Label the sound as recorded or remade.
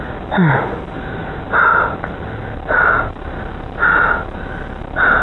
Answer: recorded